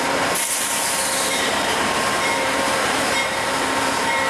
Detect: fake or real fake